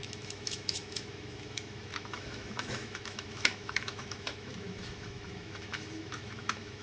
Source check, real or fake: fake